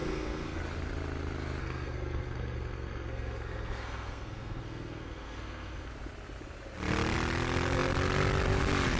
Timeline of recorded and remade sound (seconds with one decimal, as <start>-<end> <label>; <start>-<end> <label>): 0.0-0.6 remade; 0.6-1.6 recorded; 1.6-5.9 remade; 5.9-9.0 recorded